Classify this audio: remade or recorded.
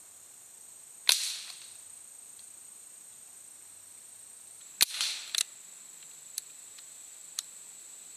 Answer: recorded